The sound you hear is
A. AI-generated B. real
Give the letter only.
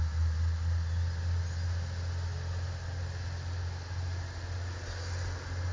B